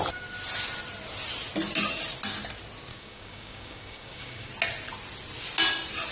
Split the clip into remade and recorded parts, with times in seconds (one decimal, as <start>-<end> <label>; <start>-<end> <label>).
0.0-2.9 recorded; 2.9-4.5 remade; 4.5-6.1 recorded